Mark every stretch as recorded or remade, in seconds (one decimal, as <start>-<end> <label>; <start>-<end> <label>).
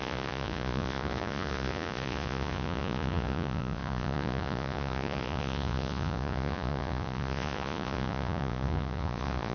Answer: 0.0-9.5 remade